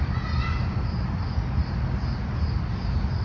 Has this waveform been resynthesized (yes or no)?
no